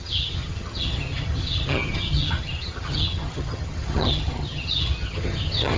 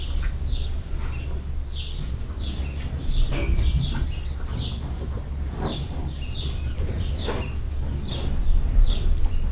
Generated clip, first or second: first